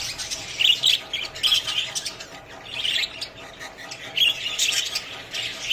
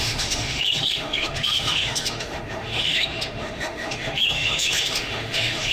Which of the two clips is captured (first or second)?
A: first